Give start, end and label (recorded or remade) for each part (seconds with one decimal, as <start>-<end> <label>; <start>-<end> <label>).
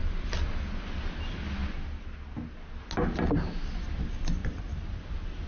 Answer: 0.0-0.6 remade; 0.6-4.4 recorded; 4.4-5.1 remade; 5.1-5.5 recorded